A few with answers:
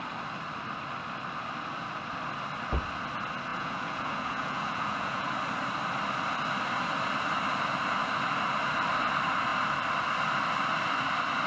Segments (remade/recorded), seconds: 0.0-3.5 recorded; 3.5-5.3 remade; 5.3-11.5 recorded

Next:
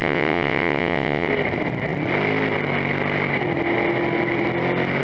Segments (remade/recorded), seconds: 0.0-1.3 remade; 1.3-5.0 recorded